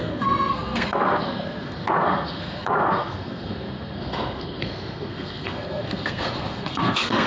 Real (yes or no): no